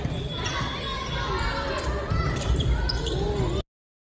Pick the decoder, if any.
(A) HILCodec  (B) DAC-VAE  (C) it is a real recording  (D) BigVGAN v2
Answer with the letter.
C